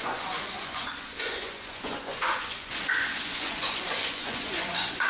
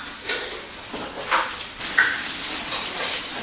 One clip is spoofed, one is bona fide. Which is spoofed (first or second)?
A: first